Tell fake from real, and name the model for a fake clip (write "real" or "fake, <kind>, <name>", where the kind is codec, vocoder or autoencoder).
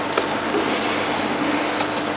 real